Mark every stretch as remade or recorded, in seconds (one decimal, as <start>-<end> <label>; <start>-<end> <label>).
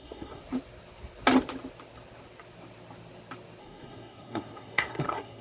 0.0-0.4 remade; 0.4-3.6 recorded; 3.6-5.4 remade